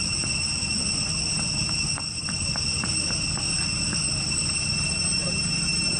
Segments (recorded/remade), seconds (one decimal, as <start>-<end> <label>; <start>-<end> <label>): 0.0-1.6 recorded; 1.6-2.4 remade; 2.4-5.2 recorded; 5.2-6.0 remade